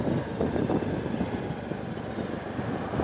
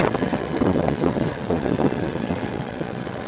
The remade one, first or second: second